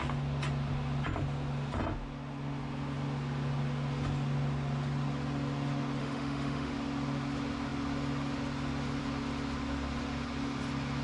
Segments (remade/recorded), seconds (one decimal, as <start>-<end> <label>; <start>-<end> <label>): 0.0-6.0 recorded; 6.0-6.7 remade; 6.7-11.0 recorded